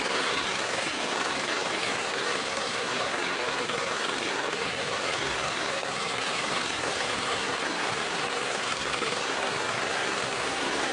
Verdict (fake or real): fake